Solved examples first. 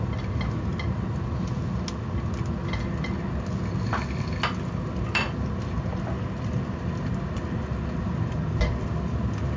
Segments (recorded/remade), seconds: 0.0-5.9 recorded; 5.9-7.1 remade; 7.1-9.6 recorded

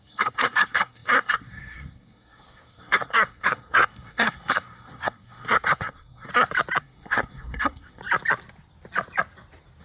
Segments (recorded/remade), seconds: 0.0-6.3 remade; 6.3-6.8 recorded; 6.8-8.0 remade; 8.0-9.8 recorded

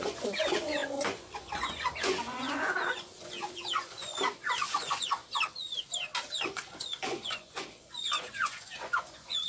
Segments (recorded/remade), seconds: 0.0-5.2 remade; 5.2-6.3 recorded; 6.3-9.5 remade

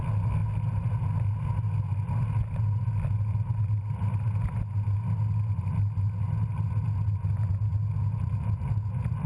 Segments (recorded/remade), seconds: 0.0-9.3 recorded

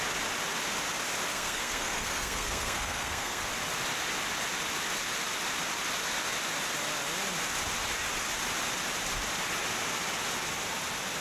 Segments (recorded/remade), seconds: 0.0-1.3 recorded; 1.3-3.4 remade; 3.4-11.2 recorded